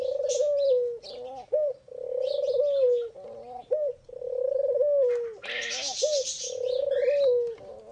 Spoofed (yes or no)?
no